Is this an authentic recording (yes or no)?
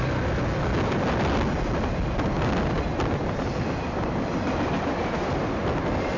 yes